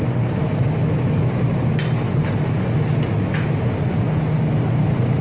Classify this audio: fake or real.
real